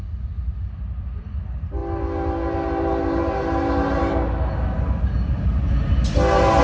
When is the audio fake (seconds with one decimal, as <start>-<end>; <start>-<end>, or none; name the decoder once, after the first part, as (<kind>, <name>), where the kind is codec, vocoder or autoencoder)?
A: none